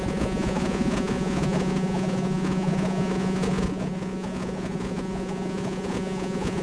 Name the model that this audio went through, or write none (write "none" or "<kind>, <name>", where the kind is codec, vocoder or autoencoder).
vocoder, Vocos